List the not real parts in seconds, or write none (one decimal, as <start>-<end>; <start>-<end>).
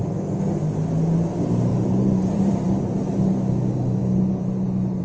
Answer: 1.7-3.2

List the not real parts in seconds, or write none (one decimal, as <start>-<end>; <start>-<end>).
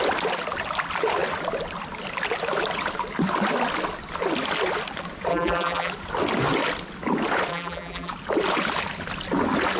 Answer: 5.3-5.9; 7.5-8.1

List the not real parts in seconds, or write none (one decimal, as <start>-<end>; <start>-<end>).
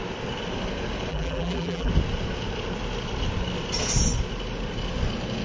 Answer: 1.1-1.9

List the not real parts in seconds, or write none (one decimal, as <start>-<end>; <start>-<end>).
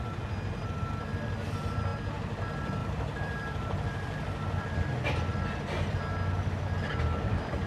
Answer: 2.8-5.7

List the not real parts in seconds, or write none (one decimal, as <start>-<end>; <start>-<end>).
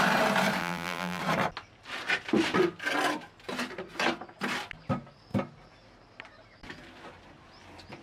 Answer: 0.6-1.2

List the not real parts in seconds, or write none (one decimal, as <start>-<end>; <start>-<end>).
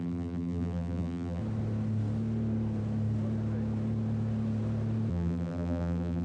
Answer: 0.0-1.4; 5.1-6.2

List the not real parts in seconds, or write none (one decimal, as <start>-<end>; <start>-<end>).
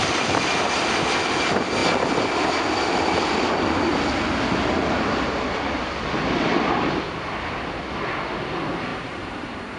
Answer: 8.9-9.8